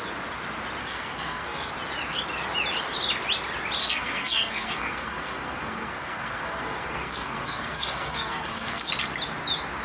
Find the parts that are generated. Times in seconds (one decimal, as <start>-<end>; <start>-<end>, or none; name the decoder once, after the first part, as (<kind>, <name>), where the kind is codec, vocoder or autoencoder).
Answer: 0.8-1.7 (codec, SNAC); 3.8-8.9